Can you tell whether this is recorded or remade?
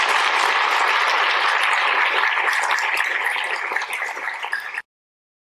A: recorded